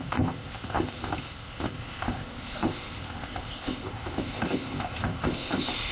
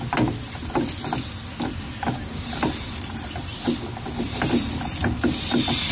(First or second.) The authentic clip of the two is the second